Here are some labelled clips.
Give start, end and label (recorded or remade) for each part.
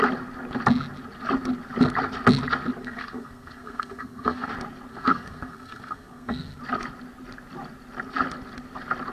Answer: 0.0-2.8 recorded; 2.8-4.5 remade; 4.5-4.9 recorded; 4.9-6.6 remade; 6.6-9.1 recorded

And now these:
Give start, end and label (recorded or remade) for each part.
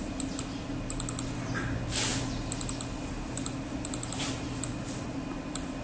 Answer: 0.0-5.8 recorded